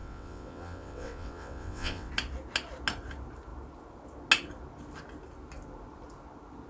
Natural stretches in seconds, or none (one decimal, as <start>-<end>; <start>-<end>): 2.1-6.7